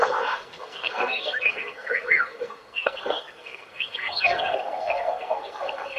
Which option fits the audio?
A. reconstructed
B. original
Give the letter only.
A